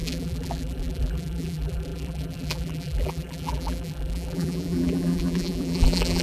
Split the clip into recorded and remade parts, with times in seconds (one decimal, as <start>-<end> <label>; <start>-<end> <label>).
0.0-6.2 remade